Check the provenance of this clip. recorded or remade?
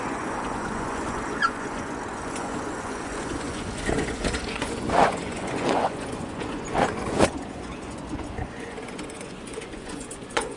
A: remade